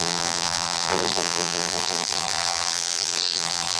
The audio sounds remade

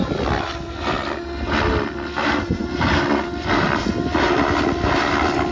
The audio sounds recorded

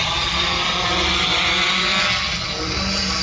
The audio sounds recorded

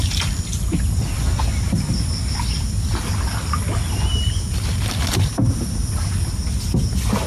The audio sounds recorded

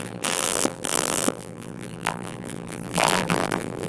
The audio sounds remade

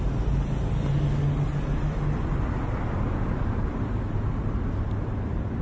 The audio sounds recorded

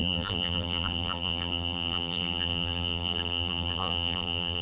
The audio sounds remade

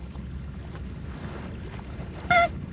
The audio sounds remade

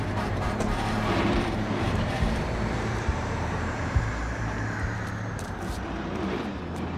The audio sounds remade